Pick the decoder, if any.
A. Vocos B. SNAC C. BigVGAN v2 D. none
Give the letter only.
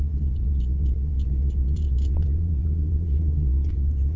A